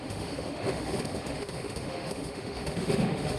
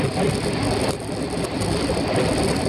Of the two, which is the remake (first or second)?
first